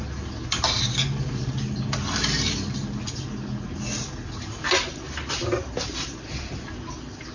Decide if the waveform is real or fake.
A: real